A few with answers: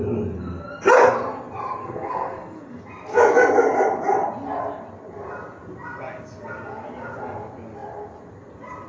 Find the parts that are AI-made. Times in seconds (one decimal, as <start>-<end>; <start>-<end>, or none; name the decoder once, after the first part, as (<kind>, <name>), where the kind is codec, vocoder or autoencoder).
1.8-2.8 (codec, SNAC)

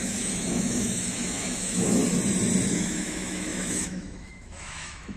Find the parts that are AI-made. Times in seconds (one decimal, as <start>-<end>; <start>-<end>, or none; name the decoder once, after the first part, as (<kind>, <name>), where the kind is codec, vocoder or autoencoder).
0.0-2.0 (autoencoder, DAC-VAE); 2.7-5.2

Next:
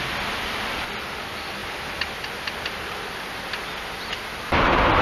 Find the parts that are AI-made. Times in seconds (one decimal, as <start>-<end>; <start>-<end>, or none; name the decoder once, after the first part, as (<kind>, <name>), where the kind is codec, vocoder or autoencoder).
none

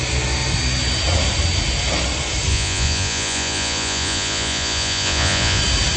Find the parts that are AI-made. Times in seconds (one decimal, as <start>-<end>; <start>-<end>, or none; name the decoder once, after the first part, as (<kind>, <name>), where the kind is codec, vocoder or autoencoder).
2.5-5.6 (vocoder, Vocos)

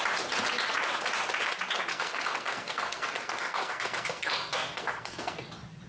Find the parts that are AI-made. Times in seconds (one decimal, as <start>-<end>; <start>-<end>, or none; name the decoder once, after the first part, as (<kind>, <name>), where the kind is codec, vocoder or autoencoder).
1.9-5.4 (codec, SNAC)

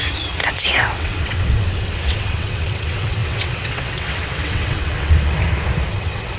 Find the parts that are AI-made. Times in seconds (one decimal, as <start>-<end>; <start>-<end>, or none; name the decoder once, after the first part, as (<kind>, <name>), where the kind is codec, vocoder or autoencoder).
0.0-5.4 (vocoder, WaveNeXt); 5.9-6.4

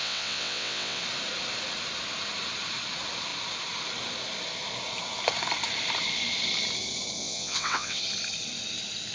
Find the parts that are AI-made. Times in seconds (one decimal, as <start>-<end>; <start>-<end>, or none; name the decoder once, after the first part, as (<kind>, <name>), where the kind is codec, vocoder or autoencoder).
0.0-1.0 (vocoder, WaveNeXt); 7.2-8.0

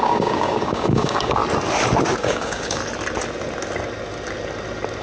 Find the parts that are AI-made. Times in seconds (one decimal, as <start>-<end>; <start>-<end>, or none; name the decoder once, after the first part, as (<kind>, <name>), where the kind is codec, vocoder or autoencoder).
0.0-1.4 (codec, DAC); 2.2-2.8